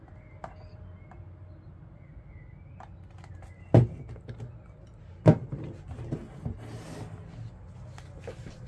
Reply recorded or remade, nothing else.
recorded